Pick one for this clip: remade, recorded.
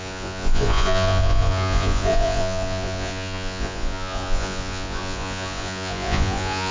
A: remade